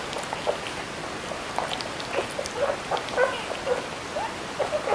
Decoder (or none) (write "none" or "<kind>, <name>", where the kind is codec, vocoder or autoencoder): none